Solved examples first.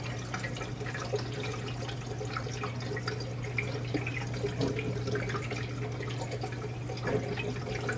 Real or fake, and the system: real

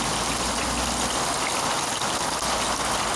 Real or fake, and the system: real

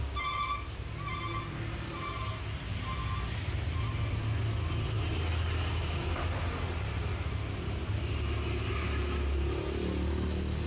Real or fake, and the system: real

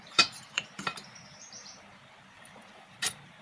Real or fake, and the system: fake, vocoder, BigVGAN v2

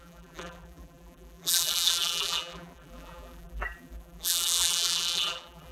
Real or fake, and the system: fake, vocoder, BigVGAN v2